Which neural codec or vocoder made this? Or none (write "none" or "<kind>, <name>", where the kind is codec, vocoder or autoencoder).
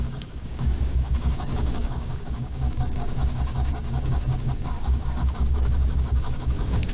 codec, DAC